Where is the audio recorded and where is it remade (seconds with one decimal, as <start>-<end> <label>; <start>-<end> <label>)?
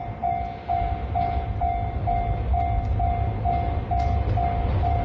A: 0.0-5.0 recorded